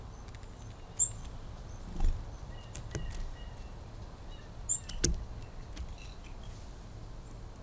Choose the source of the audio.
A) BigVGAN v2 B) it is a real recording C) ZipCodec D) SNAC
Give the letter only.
B